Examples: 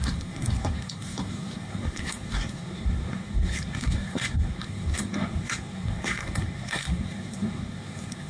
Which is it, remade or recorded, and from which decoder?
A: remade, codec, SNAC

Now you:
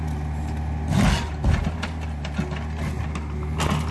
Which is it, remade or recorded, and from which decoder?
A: recorded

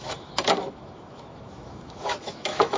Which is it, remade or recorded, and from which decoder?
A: remade, autoencoder, DAC-VAE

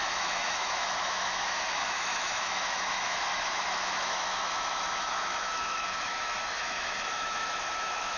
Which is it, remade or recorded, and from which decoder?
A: remade, autoencoder, DAC-VAE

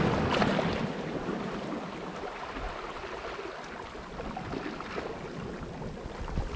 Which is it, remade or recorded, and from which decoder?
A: recorded